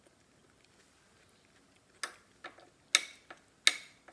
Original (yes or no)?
yes